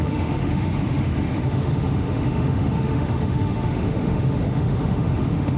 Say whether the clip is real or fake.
fake